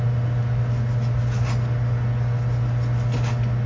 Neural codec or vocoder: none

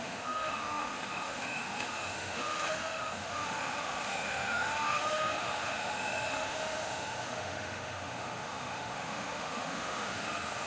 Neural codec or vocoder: autoencoder, DAC-VAE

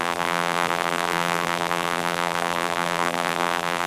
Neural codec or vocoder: vocoder, BigVGAN v2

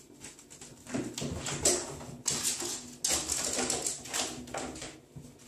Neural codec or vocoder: none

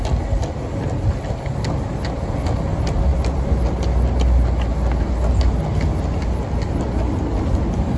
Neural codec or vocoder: none